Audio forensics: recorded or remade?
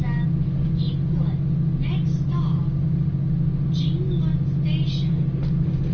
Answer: recorded